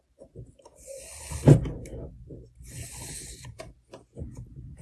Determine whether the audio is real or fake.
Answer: real